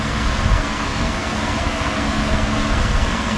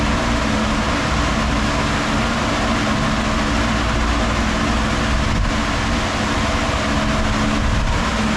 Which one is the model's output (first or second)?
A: first